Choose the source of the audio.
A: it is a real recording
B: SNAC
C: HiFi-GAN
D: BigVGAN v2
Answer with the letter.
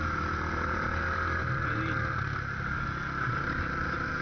A